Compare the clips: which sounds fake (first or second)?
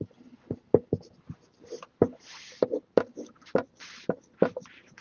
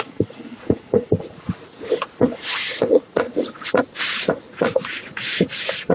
second